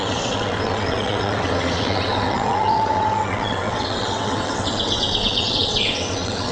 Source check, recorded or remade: remade